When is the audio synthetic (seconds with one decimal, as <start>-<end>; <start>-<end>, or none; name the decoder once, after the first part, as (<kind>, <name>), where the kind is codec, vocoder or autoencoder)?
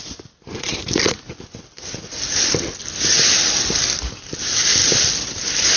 0.0-5.8 (vocoder, BigVGAN v2)